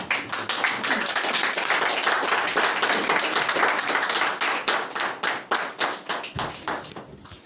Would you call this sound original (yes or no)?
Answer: yes